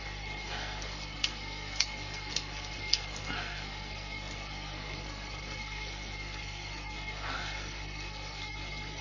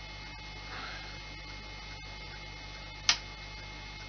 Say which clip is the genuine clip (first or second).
second